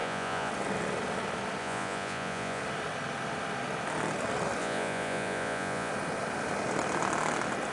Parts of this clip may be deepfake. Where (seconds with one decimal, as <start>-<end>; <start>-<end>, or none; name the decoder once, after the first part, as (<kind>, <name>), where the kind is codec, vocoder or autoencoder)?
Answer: 0.0-0.5 (vocoder, Vocos); 1.6-2.6; 4.6-5.9

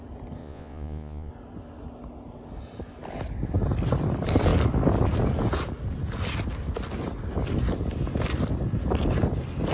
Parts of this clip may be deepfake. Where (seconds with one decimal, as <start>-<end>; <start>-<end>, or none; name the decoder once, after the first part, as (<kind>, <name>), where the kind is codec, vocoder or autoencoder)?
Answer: 0.4-1.3 (vocoder, Vocos)

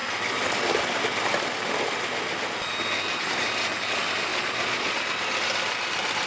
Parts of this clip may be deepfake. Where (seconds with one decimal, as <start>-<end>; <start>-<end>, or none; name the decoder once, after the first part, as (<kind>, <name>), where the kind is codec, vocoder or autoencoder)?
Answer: 4.3-5.0 (vocoder, Vocos)

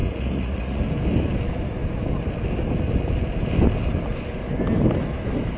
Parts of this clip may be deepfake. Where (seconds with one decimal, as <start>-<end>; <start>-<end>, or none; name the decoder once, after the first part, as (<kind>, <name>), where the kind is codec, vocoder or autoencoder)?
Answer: 0.0-0.8 (vocoder, Vocos)